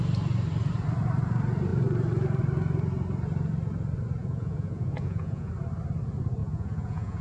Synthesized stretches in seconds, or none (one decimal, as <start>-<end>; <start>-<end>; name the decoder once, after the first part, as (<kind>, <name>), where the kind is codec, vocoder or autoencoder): 4.2-5.5 (vocoder, Vocos); 6.4-7.2